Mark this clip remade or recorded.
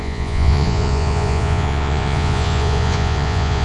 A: remade